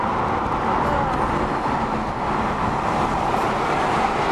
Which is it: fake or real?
real